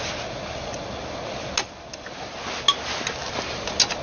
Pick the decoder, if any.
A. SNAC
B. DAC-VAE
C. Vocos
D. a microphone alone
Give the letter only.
D